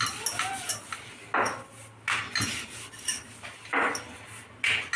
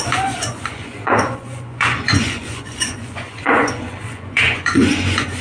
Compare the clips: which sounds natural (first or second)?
first